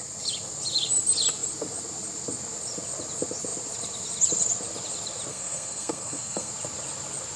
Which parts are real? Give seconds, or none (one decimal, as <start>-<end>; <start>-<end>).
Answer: 0.0-5.3; 6.5-7.4